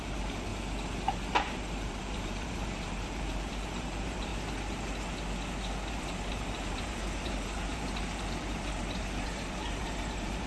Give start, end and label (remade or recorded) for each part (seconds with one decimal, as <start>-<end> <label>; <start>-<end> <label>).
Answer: 0.0-0.5 remade; 0.5-1.3 recorded; 1.3-4.3 remade; 4.3-5.9 recorded; 5.9-10.5 remade